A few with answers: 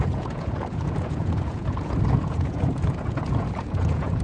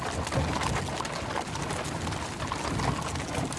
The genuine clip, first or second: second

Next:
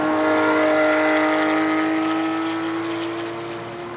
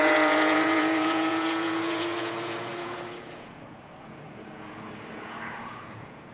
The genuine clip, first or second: first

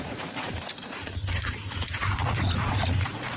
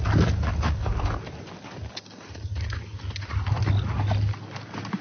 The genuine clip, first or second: second